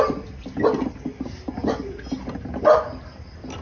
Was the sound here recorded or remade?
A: recorded